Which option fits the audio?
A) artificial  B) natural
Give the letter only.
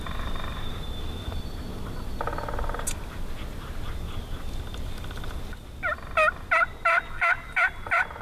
B